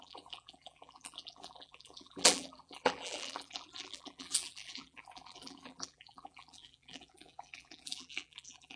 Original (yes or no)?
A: no